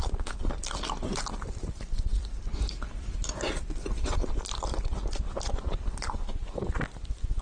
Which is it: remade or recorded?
recorded